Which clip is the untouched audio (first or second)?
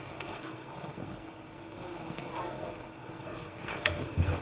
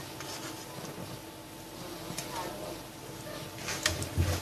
second